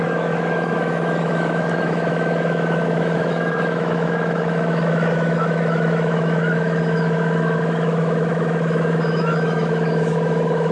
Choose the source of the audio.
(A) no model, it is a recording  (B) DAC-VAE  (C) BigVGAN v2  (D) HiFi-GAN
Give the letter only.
B